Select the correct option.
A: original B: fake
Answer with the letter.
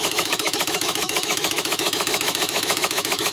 B